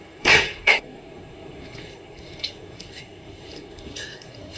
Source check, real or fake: fake